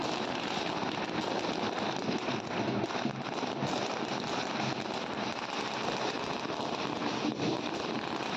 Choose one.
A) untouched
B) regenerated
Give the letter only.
A